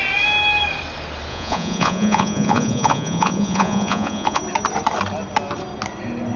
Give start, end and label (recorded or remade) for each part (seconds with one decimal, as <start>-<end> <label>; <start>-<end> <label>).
0.0-1.3 recorded; 1.3-4.4 remade; 4.4-6.4 recorded